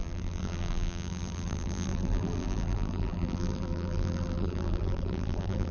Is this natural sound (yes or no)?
no